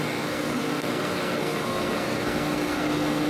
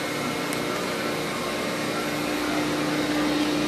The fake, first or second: first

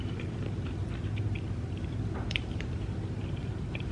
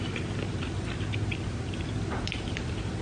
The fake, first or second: first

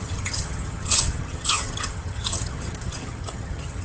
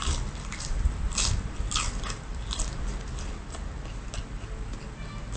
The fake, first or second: first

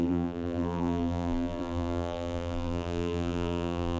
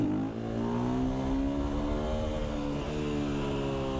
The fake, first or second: first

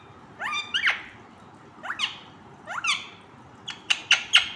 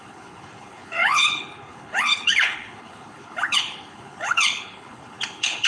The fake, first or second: second